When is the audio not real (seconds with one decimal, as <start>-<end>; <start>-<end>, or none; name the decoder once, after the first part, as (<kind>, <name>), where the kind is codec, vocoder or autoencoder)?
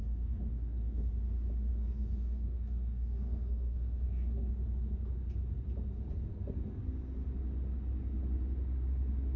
0.0-1.1 (codec, SNAC); 1.7-4.5; 6.3-6.8